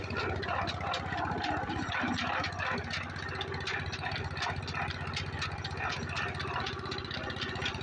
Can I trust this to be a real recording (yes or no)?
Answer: yes